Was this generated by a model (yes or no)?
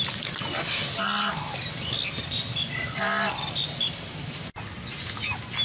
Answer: no